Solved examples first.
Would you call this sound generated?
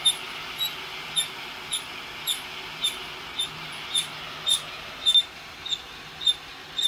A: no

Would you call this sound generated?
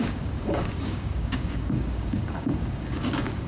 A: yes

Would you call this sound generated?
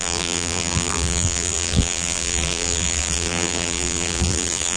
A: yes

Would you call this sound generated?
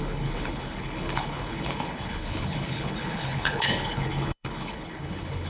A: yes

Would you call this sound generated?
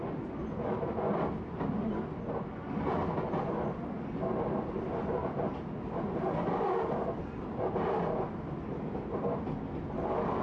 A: no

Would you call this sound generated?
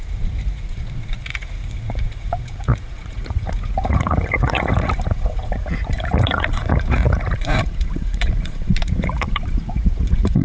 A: yes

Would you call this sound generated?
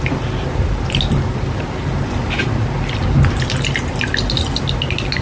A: no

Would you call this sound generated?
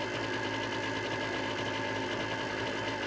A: no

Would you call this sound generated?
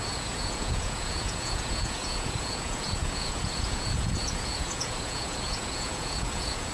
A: yes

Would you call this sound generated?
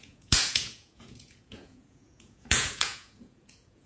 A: yes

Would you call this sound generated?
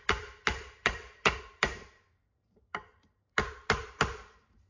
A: yes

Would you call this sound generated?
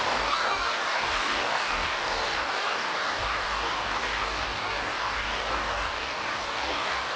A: yes